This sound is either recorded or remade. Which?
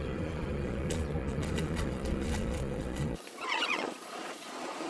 remade